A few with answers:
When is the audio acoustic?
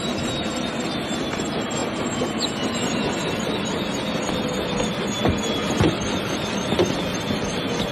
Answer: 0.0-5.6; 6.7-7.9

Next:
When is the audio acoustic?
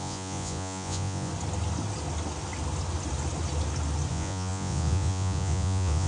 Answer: 1.3-4.1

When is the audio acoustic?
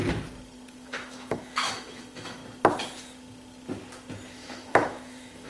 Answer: 0.0-0.7; 2.4-4.3